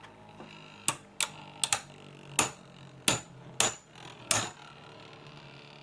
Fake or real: real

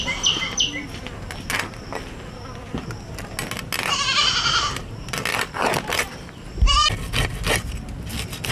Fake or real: real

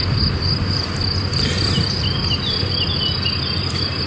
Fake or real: real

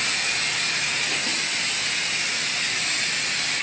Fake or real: real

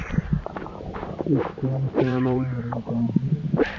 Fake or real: fake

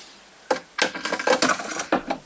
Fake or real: real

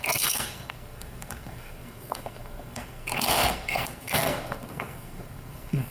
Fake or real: fake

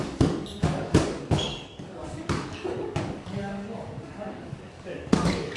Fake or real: fake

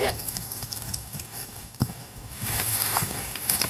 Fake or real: fake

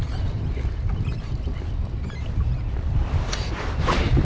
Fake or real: real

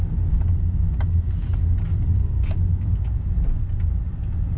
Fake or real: real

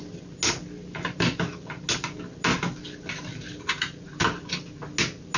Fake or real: real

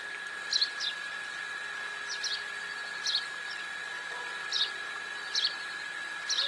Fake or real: real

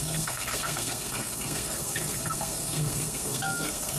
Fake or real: fake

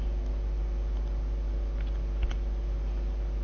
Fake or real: real